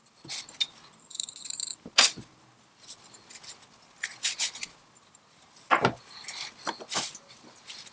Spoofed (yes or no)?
no